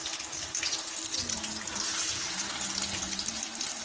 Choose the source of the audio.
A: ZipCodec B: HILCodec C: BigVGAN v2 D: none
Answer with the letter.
D